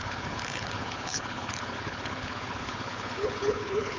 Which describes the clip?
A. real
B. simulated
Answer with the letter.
B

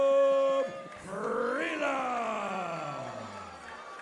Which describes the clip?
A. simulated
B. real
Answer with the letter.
B